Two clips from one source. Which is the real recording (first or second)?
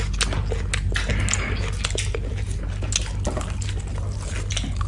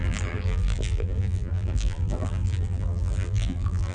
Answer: first